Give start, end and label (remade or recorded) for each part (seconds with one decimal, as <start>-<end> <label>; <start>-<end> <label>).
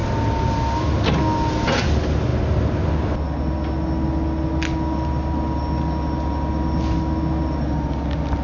0.0-8.4 recorded